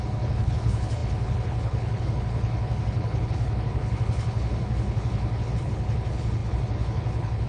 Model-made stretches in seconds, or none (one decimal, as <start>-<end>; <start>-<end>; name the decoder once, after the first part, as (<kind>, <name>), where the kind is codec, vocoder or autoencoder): 0.0-7.5 (codec, HILCodec)